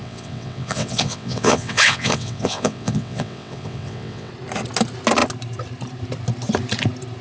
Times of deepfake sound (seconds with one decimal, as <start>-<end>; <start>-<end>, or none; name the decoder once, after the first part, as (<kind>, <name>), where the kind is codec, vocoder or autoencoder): 0.0-4.3 (vocoder, WaveNeXt)